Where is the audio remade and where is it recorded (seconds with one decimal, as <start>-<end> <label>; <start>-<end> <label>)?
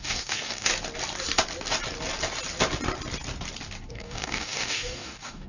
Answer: 0.0-0.7 remade; 0.7-3.9 recorded; 3.9-5.5 remade